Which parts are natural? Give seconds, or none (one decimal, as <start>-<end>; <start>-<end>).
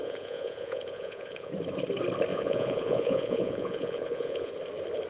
1.5-2.3; 4.5-5.1